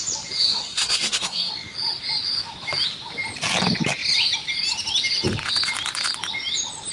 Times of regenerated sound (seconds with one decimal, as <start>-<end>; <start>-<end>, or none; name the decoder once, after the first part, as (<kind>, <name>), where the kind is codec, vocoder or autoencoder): 0.5-1.5 (codec, SNAC)